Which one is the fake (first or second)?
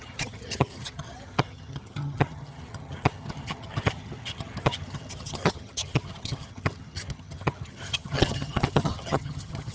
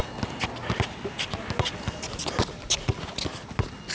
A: first